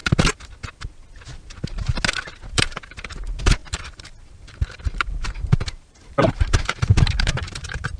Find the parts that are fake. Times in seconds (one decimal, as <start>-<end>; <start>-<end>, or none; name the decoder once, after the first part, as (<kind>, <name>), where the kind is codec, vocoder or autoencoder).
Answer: 2.5-8.0 (vocoder, BigVGAN v2)